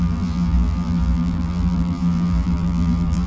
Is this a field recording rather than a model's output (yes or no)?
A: no